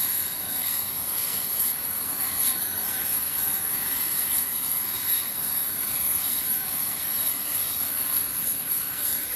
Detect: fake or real fake